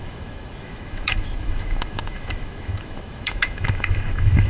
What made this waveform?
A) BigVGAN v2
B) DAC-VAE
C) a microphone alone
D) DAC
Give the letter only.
B